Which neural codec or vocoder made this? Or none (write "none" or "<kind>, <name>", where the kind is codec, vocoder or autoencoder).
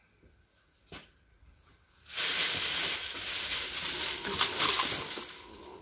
none